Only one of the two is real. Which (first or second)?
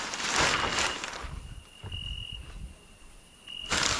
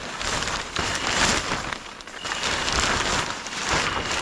first